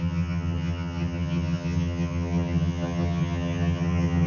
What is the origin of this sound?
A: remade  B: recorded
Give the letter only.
A